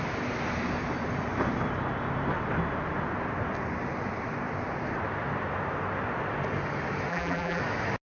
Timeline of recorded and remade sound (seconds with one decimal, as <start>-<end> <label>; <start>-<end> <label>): 0.0-7.1 recorded; 7.1-7.6 remade; 7.6-8.1 recorded